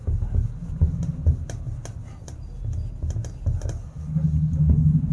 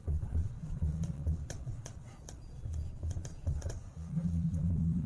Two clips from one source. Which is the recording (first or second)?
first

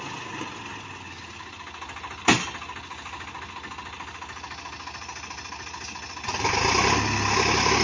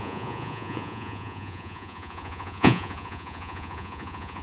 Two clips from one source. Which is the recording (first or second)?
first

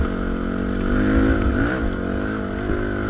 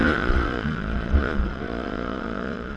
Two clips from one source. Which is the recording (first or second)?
first